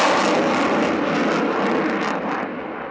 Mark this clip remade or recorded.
recorded